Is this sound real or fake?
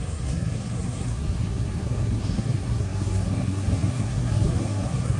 fake